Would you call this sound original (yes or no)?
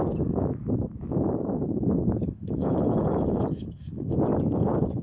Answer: no